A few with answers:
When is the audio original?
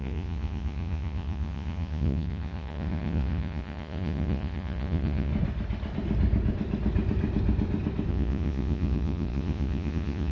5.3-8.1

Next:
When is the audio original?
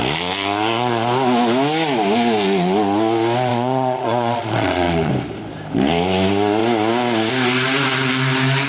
0.0-3.5; 5.1-8.7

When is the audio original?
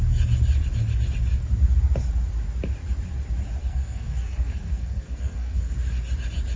0.0-3.6; 5.7-6.6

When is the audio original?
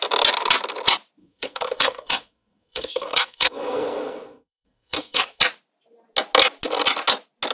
0.0-1.2; 5.4-7.5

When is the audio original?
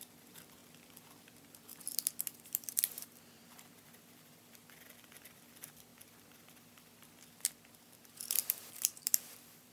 0.6-1.2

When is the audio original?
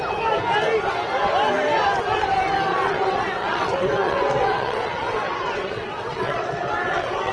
0.0-2.7